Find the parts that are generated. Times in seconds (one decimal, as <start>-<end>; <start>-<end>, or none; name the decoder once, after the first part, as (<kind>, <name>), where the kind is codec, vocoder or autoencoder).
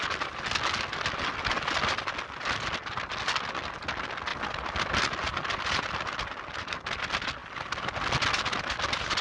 none